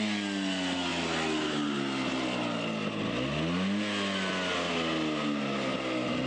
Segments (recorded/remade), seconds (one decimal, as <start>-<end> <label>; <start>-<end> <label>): 0.0-6.3 recorded